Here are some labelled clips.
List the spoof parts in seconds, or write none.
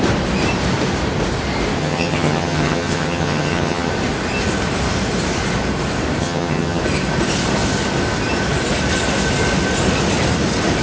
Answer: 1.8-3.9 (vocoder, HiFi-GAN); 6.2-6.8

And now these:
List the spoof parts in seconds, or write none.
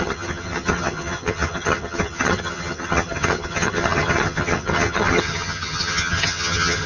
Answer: 0.0-6.9 (vocoder, HiFi-GAN)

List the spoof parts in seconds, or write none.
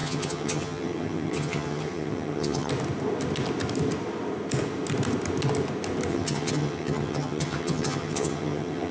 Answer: 0.0-2.7 (vocoder, HiFi-GAN); 6.1-8.9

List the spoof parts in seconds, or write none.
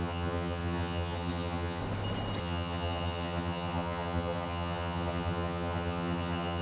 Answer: 0.0-1.8 (vocoder, HiFi-GAN); 2.4-6.6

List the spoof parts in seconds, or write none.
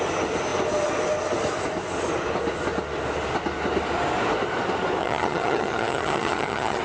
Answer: 5.0-6.8 (vocoder, HiFi-GAN)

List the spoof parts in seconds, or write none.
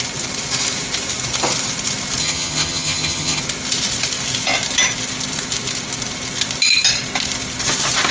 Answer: 2.2-3.4 (vocoder, HiFi-GAN)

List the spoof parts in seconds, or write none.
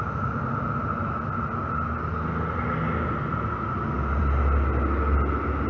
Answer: none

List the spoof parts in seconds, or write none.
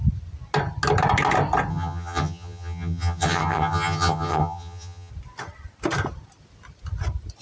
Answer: 1.7-5.1 (vocoder, HiFi-GAN)